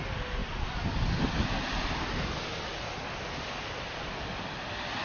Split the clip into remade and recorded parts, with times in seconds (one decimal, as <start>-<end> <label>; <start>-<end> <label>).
0.0-5.0 recorded